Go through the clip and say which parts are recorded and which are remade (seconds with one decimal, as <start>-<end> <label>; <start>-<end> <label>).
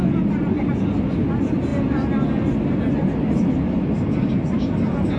0.0-5.2 recorded